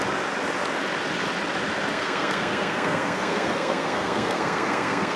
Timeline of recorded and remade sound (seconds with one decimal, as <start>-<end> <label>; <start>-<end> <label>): 0.0-1.9 recorded; 1.9-5.2 remade